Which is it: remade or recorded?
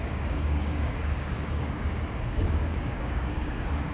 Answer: remade